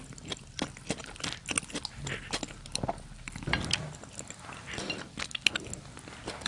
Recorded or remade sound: recorded